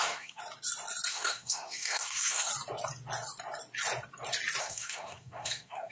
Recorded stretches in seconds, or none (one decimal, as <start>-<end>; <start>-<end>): 0.4-1.1; 2.5-4.6